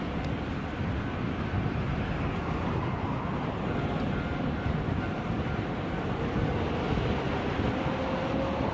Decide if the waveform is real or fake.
fake